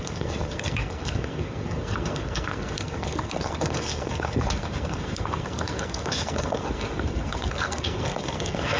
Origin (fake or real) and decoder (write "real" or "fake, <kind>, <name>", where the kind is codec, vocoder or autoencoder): fake, codec, SNAC